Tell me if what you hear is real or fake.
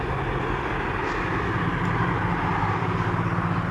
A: real